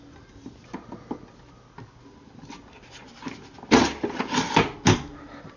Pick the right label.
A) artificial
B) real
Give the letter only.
B